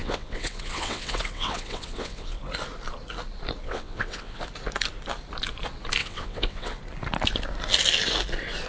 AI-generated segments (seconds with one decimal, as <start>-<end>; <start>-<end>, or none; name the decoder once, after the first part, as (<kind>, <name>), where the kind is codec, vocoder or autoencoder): 0.0-2.4 (vocoder, WaveNeXt); 3.6-4.4; 6.0-6.8